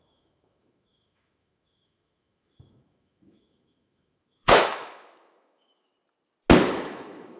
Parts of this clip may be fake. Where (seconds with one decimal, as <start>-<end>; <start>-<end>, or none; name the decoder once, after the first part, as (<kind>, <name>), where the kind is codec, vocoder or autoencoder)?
0.0-5.9 (autoencoder, DAC-VAE); 6.7-7.4